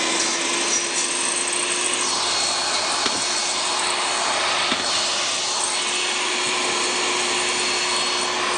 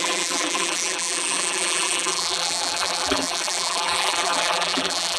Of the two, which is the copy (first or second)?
second